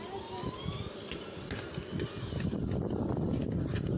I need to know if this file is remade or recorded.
recorded